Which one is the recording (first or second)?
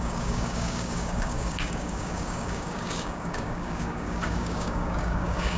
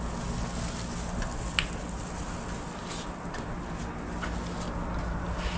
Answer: second